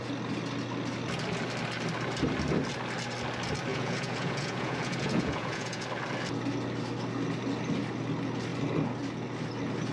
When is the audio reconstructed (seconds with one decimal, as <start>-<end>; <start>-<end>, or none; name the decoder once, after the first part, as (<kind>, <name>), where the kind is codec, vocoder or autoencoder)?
3.7-5.8 (vocoder, Vocos)